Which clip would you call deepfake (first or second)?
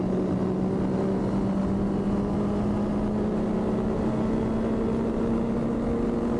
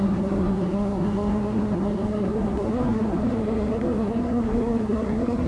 second